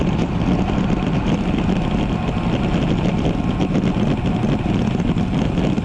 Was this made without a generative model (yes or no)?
yes